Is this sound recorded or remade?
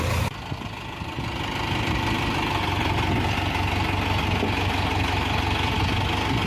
recorded